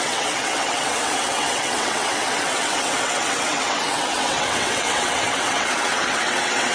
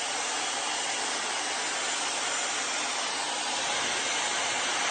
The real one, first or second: second